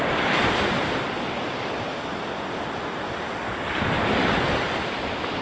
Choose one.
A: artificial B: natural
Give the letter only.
B